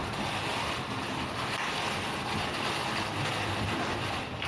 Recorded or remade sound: recorded